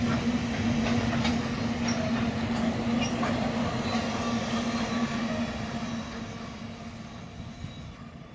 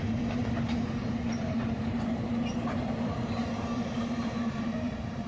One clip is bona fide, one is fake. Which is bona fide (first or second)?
first